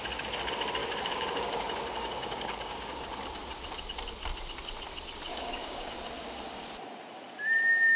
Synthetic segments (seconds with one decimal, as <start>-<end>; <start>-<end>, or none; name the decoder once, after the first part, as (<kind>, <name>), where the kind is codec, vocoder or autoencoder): 0.8-3.1 (codec, DAC); 5.3-5.9